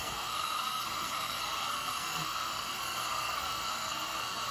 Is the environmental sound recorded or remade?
remade